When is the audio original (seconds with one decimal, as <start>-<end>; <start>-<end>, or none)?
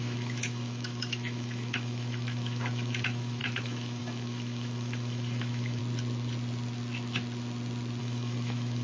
5.8-8.0